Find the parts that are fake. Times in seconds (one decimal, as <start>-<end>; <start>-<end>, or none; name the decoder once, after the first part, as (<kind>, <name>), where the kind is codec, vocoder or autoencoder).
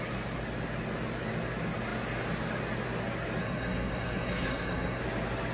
3.4-5.0 (codec, SNAC)